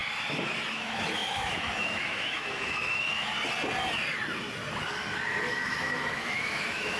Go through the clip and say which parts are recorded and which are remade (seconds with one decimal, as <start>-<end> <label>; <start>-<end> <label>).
0.0-0.7 recorded; 0.7-3.3 remade; 3.3-5.4 recorded; 5.4-7.0 remade